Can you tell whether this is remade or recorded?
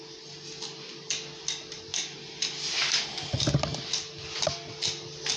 recorded